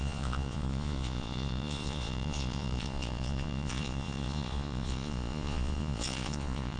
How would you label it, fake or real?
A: fake